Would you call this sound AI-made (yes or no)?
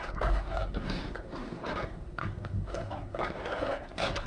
yes